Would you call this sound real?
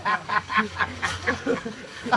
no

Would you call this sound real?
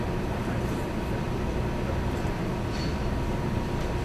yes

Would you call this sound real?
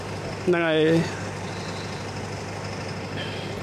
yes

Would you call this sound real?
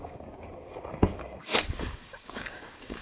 no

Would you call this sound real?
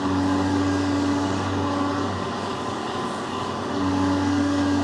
no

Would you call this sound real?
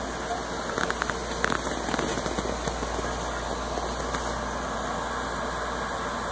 yes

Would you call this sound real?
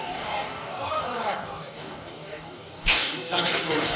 no